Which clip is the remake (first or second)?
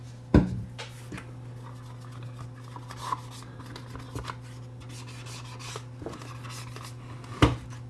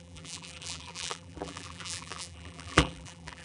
second